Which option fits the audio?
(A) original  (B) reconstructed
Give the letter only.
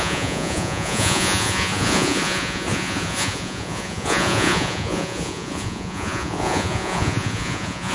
B